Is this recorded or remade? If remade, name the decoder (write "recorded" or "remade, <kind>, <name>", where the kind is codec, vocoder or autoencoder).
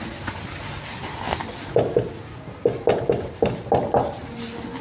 recorded